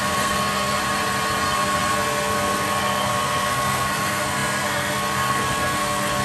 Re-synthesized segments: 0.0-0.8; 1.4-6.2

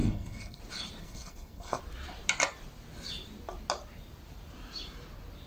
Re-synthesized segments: 0.0-0.6; 1.0-1.8